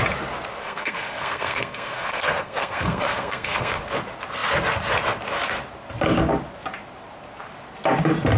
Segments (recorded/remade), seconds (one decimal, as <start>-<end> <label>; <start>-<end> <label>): 0.0-0.6 recorded; 0.6-3.8 remade; 3.8-8.4 recorded